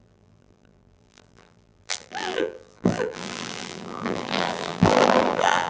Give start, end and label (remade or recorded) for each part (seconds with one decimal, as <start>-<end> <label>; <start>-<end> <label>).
0.0-5.7 remade